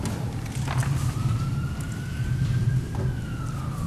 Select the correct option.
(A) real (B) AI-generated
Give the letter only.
A